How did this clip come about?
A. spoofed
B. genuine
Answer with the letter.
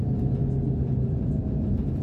B